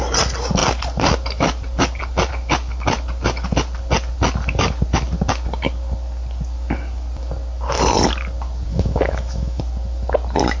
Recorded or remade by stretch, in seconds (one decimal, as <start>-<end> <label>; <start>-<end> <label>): 0.0-8.7 recorded; 8.7-9.6 remade; 9.6-10.6 recorded